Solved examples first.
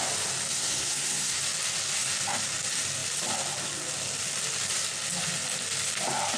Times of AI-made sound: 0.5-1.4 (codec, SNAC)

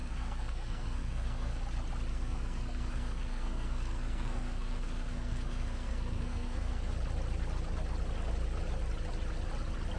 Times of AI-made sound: 0.0-1.6 (codec, SNAC); 2.1-6.9

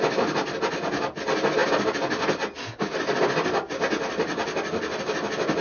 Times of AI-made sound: none

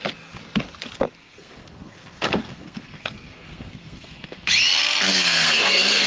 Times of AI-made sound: 1.2-4.5 (codec, SNAC); 5.1-6.1